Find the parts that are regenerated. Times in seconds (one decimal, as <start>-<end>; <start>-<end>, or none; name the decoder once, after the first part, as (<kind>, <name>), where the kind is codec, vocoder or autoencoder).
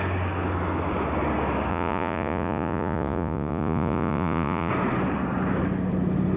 1.7-4.7 (vocoder, Vocos)